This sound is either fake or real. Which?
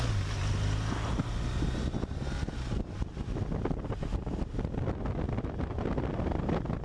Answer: real